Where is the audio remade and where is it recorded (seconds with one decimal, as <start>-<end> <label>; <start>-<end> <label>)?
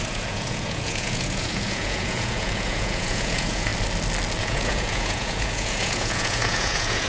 0.0-3.7 remade; 3.7-4.4 recorded; 4.4-7.1 remade